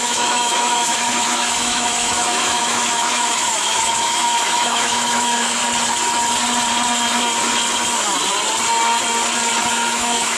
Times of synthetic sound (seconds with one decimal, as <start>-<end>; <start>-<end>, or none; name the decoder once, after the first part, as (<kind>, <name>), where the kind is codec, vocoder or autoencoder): 0.0-5.6 (autoencoder, DAC-VAE); 9.7-10.4